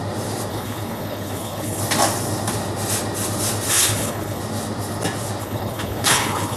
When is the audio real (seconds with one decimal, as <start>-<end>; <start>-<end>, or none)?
0.0-0.5; 1.8-3.7; 4.4-5.4

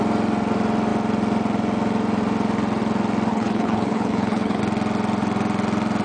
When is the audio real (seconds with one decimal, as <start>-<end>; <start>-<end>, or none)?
0.0-3.3; 4.6-6.0

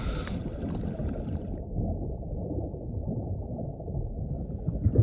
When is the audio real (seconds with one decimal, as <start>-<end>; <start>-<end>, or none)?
0.0-5.0

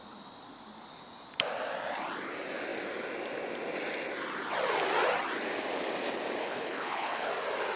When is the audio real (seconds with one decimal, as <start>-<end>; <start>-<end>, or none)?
0.0-6.4; 7.3-7.8

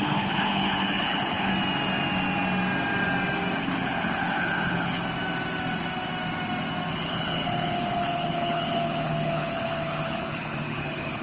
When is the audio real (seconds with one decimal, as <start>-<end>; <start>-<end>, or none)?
1.5-3.6; 5.0-6.9